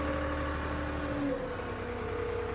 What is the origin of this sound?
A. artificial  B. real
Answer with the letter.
B